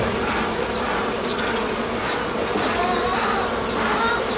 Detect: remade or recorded recorded